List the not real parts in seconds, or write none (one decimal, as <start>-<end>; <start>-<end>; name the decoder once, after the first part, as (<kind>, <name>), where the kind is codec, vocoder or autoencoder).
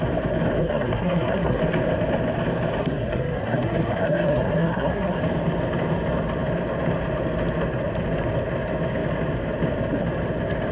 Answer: 0.6-1.6 (codec, SNAC); 2.8-5.2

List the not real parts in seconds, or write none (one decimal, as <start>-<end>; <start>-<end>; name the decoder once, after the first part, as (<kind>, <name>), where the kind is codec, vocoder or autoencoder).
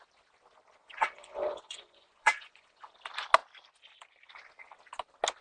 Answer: 0.8-2.9 (vocoder, Vocos)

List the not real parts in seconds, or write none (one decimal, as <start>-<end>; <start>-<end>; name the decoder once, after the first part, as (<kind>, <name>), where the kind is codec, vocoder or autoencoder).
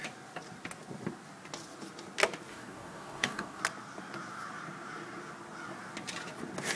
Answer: 2.5-3.6 (codec, DAC)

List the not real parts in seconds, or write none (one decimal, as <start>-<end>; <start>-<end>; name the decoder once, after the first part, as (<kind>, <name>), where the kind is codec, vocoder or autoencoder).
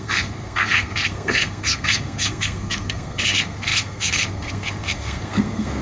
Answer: 0.0-5.8 (codec, SNAC)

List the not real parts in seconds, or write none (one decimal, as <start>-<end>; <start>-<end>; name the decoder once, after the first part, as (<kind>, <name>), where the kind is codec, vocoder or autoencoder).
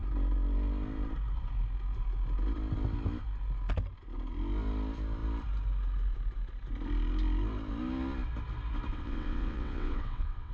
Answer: 8.9-10.5 (vocoder, WaveNeXt)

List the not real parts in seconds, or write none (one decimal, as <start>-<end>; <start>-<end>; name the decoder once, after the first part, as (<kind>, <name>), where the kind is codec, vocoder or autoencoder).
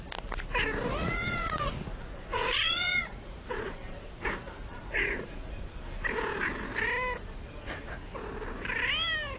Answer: 0.9-5.8 (vocoder, Vocos)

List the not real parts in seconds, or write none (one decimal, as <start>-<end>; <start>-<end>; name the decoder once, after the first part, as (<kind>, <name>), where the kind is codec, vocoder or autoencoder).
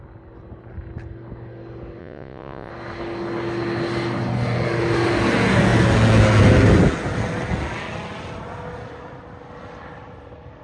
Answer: 2.0-2.7 (vocoder, Vocos)